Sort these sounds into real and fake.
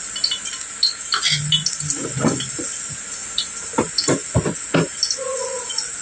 real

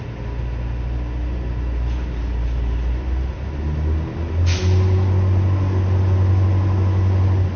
real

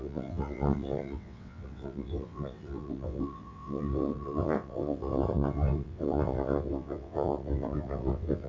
fake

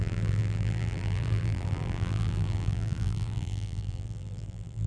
fake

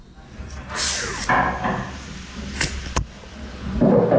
real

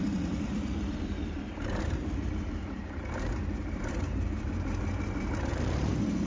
fake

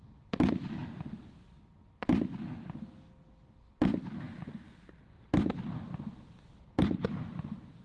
real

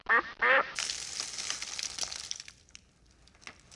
real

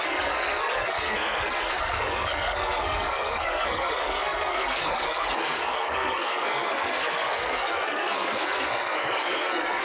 fake